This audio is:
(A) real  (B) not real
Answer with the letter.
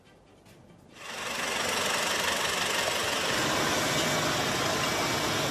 A